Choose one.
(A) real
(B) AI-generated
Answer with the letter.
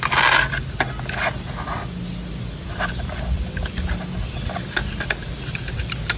A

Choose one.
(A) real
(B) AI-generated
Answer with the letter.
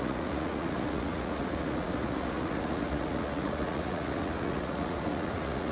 B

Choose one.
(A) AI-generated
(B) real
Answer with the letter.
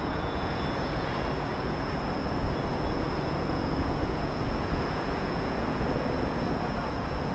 A